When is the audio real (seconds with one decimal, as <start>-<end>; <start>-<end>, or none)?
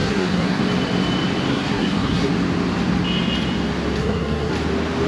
0.6-1.5; 2.3-4.0; 4.5-5.1